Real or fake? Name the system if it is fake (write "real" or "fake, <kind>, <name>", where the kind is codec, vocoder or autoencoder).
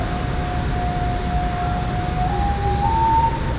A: real